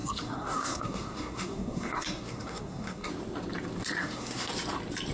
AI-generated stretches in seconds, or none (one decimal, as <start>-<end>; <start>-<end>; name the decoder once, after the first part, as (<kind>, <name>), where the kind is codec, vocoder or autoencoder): 0.0-3.1 (codec, SNAC); 4.0-4.5